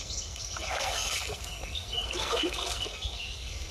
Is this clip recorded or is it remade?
remade